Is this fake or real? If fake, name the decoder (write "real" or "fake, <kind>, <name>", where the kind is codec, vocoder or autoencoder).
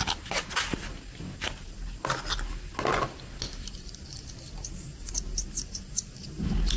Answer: real